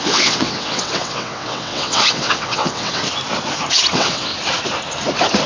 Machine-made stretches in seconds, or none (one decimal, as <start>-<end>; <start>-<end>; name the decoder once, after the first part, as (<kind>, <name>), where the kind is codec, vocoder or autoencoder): 0.0-3.0 (vocoder, WaveNeXt); 3.9-4.3